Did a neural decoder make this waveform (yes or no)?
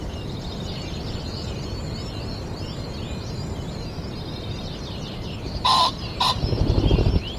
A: no